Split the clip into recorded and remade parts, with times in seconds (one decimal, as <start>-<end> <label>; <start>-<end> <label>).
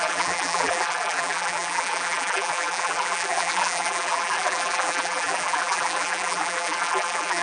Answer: 0.0-7.4 remade